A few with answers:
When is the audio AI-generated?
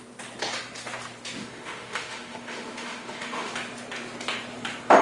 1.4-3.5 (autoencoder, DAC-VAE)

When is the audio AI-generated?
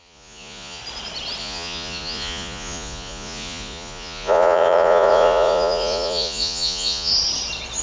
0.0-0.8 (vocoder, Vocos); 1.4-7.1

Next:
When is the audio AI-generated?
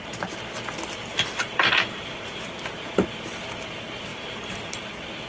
1.1-2.5 (vocoder, BigVGAN v2); 4.1-4.8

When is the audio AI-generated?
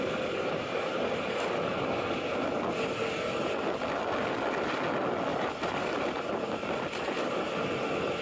5.3-5.8 (vocoder, BigVGAN v2)